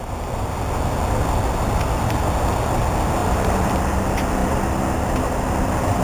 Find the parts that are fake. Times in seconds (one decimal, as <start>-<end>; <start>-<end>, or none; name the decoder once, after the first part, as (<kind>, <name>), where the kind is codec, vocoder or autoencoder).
3.2-3.8 (vocoder, BigVGAN v2); 4.4-6.0